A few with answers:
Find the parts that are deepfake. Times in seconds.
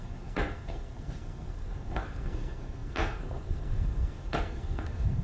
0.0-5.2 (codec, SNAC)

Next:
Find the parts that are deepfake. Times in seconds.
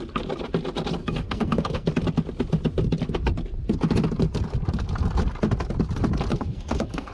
1.0-1.9 (codec, SNAC); 6.3-7.1